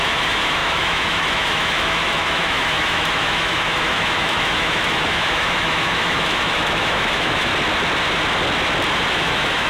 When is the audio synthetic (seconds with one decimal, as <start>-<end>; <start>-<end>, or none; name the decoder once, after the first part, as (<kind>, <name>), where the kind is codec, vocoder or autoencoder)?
0.0-7.5 (autoencoder, DAC-VAE); 9.1-9.7